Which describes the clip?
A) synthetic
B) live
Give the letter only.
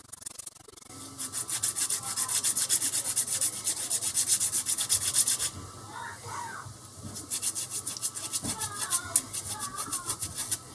B